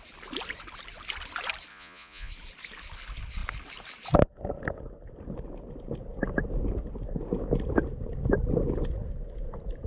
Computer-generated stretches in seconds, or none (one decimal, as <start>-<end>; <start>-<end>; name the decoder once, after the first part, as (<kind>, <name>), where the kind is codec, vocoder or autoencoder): 1.7-2.3 (vocoder, Vocos)